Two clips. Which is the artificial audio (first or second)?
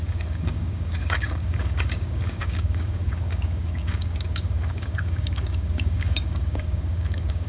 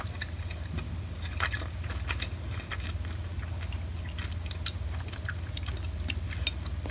first